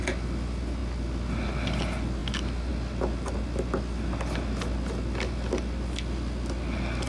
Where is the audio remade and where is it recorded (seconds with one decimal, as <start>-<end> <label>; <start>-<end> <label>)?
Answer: 0.0-7.1 recorded